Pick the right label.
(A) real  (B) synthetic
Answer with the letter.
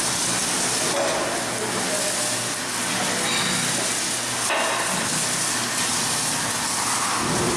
A